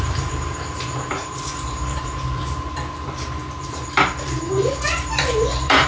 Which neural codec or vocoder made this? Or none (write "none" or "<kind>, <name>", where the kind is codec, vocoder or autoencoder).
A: vocoder, BigVGAN v2